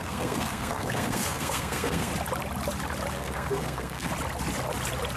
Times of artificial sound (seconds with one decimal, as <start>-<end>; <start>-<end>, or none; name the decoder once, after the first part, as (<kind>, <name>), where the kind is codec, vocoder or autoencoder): 0.0-2.1 (codec, SNAC); 3.1-4.1

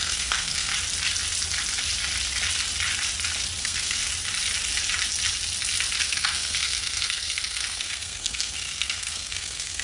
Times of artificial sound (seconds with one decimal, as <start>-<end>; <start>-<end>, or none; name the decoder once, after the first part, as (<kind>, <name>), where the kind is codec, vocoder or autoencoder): 0.0-0.7 (codec, SNAC); 3.6-4.0; 6.0-9.8

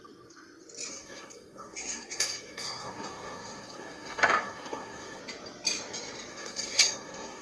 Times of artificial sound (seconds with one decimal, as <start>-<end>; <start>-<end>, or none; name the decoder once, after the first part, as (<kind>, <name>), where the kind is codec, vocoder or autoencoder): 0.9-5.2 (codec, SNAC); 6.3-7.4

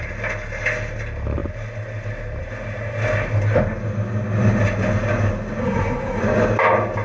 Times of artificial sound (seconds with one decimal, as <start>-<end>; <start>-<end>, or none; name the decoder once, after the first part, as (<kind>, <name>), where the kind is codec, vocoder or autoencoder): 5.6-6.2 (codec, SNAC)

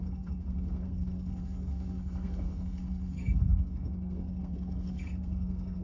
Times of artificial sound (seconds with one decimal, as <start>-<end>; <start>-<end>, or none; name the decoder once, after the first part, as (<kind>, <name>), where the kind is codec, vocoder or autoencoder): 0.0-5.8 (codec, SNAC)